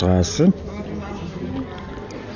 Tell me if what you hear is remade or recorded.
recorded